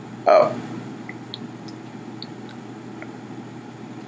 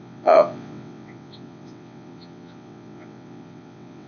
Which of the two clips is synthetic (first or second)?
second